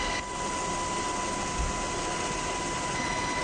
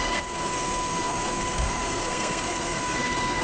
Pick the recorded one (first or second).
first